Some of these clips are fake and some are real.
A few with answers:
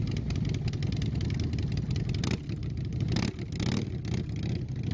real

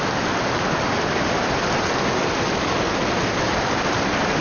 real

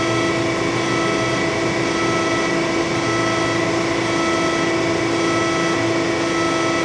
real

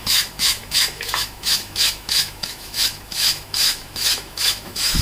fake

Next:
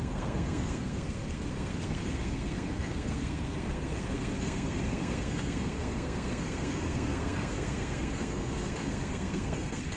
fake